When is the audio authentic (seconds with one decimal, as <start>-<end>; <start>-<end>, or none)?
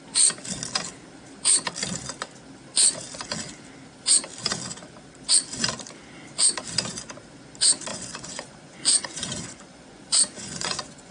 0.0-7.9